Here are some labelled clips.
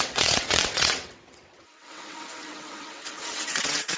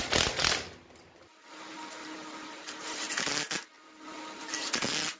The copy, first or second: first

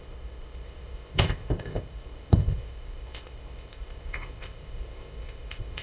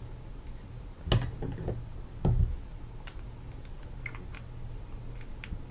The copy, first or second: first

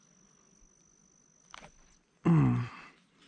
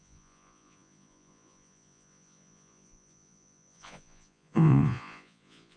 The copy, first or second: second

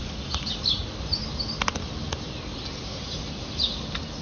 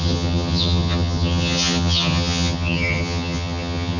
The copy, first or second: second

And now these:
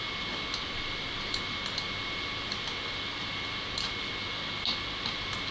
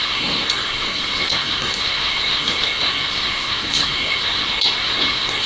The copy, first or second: second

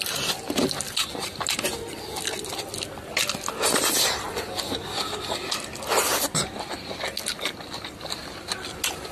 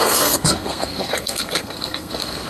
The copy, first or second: second